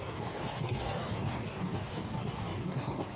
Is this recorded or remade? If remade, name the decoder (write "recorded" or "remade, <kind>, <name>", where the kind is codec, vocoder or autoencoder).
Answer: remade, codec, DAC